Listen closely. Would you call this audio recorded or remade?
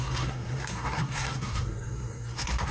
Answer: remade